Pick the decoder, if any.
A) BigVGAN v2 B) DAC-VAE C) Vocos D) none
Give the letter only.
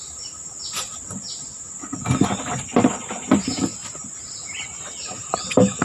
D